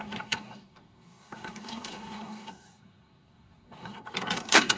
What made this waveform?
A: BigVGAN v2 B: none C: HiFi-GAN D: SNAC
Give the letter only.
D